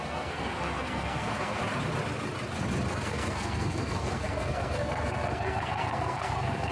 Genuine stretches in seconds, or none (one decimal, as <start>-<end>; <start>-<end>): 1.6-2.9